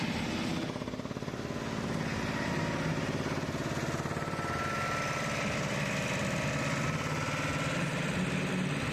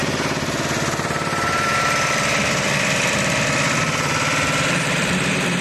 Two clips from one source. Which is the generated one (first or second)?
second